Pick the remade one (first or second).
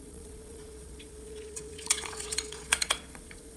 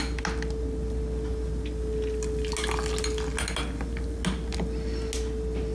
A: first